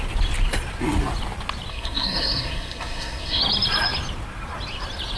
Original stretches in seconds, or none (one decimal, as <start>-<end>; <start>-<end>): 0.0-1.7; 3.4-5.2